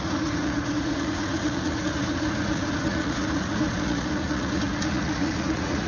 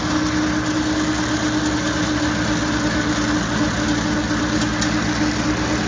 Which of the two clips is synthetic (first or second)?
first